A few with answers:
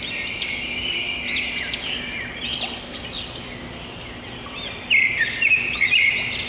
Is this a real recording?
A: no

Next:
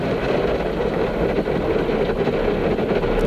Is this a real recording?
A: yes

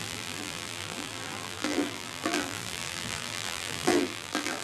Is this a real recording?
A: no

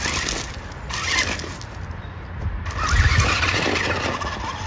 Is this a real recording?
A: yes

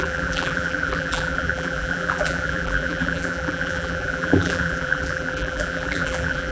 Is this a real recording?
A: no